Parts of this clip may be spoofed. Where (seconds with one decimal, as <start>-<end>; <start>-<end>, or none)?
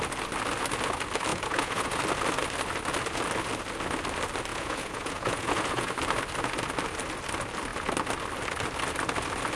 1.3-2.0; 4.5-5.9